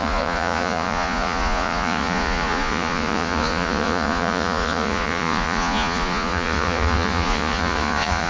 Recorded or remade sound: remade